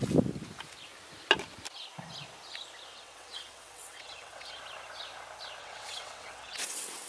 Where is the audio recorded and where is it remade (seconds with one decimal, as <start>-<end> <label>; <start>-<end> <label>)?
0.0-2.9 recorded; 2.9-4.6 remade; 4.6-5.6 recorded; 5.6-7.1 remade